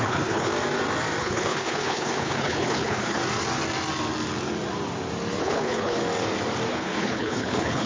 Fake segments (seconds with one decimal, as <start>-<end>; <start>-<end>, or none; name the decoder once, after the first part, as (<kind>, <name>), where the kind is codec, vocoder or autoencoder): 0.0-0.5 (codec, HILCodec); 1.2-3.2; 5.4-6.0; 6.7-7.9